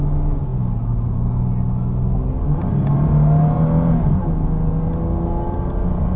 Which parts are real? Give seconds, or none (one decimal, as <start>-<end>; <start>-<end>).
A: 0.0-6.2